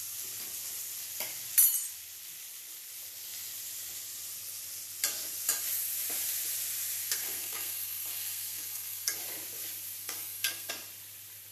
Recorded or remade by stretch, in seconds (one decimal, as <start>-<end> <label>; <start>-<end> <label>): 0.0-7.0 recorded; 7.0-9.1 remade; 9.1-10.0 recorded; 10.0-10.7 remade; 10.7-11.5 recorded